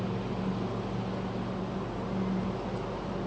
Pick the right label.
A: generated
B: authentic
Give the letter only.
B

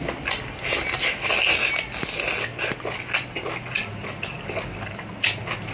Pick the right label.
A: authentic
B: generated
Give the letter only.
A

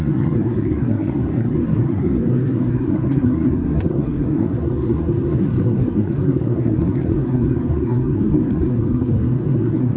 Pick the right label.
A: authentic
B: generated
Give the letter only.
B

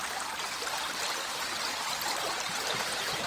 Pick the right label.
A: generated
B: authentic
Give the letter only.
A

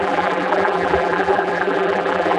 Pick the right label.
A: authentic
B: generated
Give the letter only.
B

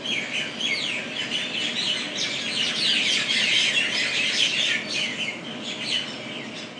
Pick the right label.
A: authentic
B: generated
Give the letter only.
A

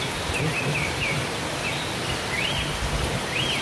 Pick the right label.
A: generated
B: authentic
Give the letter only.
B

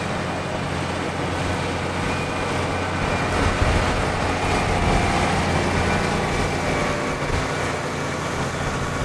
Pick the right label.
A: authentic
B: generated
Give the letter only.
A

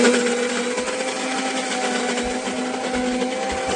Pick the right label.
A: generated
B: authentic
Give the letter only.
B